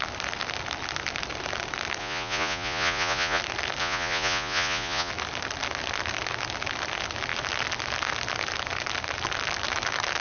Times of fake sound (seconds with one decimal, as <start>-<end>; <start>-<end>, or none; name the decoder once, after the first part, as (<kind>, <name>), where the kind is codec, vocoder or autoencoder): 2.0-3.4 (vocoder, Vocos); 3.8-5.1